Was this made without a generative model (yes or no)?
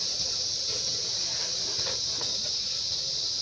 yes